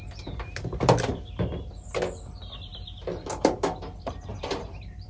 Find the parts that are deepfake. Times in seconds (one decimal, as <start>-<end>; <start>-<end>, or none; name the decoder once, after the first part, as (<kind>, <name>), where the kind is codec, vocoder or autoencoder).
4.3-5.1 (vocoder, BigVGAN v2)